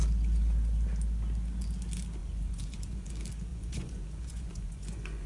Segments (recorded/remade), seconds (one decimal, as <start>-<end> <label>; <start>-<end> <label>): 0.0-2.2 recorded; 2.2-3.1 remade; 3.1-3.5 recorded; 3.5-5.3 remade